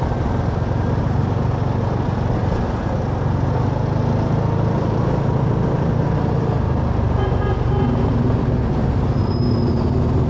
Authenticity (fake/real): real